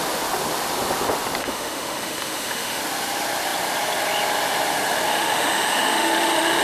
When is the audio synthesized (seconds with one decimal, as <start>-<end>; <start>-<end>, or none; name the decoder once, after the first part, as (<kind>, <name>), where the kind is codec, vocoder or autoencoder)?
1.4-2.8 (autoencoder, DAC-VAE); 5.1-6.6